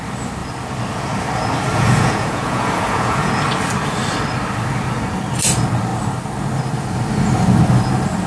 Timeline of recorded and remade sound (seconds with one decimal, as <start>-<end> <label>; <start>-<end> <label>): 0.0-1.7 recorded; 1.7-3.3 remade; 3.3-8.3 recorded